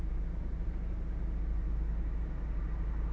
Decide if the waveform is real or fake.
real